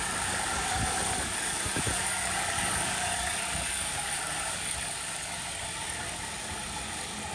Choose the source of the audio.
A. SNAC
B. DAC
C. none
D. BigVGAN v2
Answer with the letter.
B